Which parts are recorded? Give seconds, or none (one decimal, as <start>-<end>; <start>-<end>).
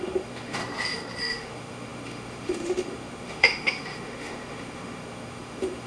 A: 0.6-1.2